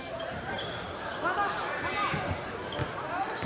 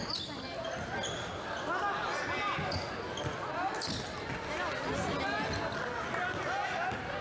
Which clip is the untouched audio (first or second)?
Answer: second